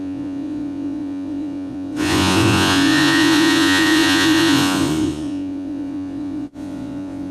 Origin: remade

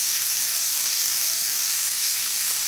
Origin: remade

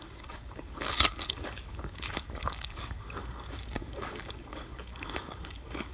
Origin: remade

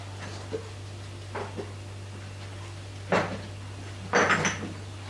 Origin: recorded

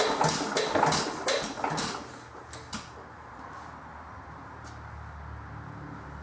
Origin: recorded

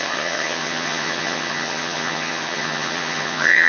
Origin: remade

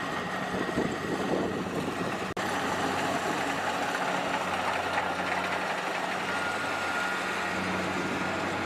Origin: recorded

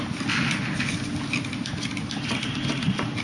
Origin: recorded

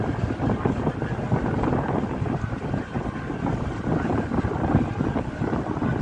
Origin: recorded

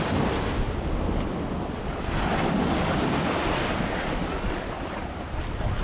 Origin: recorded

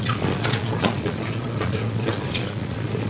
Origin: remade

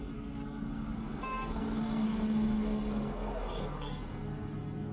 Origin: remade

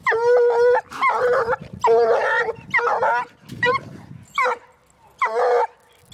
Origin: recorded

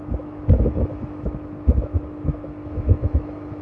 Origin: remade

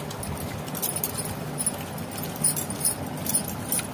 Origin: recorded